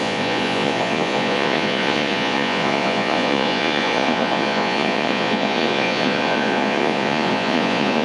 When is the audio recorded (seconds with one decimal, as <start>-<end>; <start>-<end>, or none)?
none